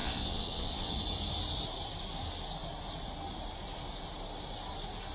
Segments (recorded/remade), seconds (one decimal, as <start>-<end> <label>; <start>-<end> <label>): 0.0-1.0 remade; 1.0-5.1 recorded